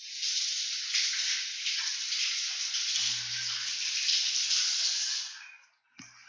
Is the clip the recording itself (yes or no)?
yes